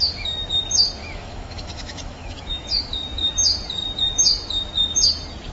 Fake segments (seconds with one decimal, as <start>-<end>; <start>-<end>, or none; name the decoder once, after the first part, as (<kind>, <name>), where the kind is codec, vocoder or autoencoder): 1.0-2.9 (autoencoder, DAC-VAE)